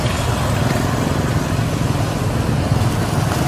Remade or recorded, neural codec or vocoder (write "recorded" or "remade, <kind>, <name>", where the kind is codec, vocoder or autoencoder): recorded